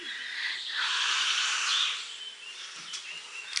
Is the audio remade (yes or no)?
no